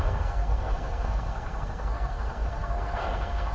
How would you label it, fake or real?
fake